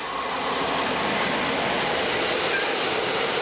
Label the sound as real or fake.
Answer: real